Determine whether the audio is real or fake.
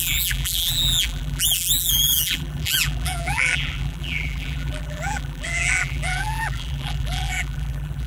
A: fake